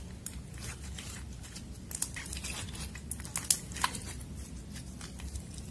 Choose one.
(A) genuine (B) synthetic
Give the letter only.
A